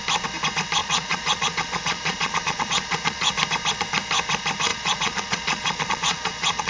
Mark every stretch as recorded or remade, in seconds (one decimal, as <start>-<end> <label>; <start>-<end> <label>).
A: 0.0-0.8 recorded; 0.8-3.3 remade; 3.3-4.7 recorded; 4.7-6.7 remade